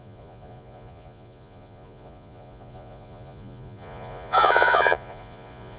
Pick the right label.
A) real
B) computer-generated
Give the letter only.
B